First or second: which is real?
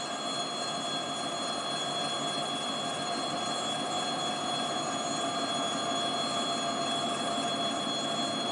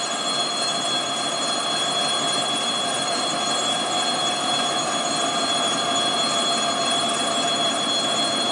first